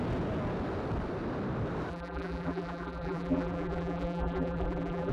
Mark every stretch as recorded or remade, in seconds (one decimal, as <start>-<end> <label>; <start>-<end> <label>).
0.0-1.9 recorded; 1.9-5.1 remade